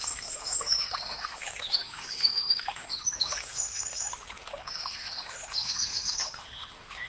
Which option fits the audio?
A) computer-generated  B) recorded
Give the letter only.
A